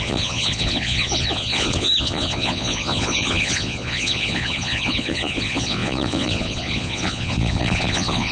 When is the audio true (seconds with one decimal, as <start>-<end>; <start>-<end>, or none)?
none